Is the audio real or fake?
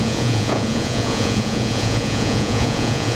fake